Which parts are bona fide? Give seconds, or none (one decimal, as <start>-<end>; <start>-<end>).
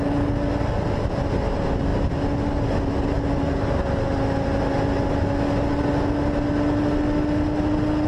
0.0-8.1